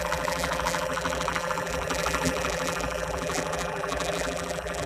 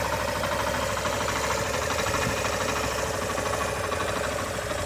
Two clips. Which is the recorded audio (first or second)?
second